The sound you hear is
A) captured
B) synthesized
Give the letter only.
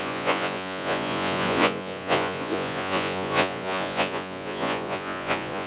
B